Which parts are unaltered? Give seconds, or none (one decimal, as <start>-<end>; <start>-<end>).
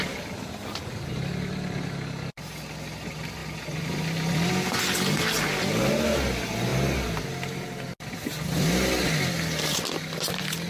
0.0-10.7